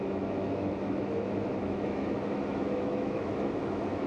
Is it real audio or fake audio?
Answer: fake